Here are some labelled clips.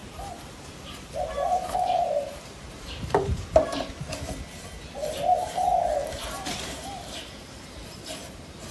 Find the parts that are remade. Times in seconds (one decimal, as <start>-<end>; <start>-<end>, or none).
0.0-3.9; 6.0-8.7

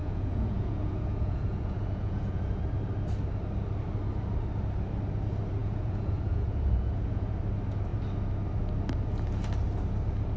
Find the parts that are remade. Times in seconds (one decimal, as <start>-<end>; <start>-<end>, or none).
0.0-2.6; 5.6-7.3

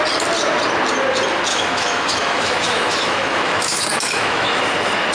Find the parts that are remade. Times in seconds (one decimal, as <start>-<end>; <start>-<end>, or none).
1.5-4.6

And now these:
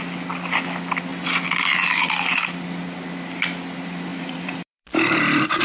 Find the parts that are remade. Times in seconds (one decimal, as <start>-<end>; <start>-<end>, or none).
4.1-5.6

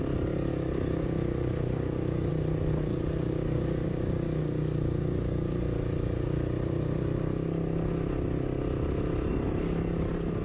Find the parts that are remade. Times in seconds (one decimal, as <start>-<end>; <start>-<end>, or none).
0.5-2.3; 2.9-5.6

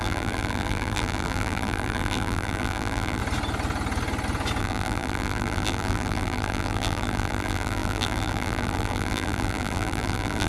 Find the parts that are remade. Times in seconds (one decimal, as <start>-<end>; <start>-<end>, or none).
0.0-3.2; 4.6-10.5

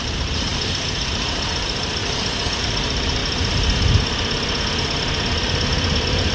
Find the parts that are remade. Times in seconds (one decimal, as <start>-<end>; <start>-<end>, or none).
0.0-2.0; 2.6-3.2